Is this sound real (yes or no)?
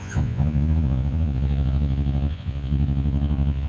no